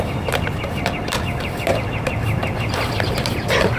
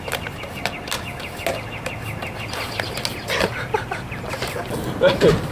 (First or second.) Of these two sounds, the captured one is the second